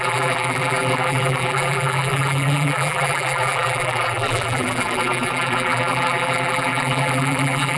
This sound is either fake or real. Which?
fake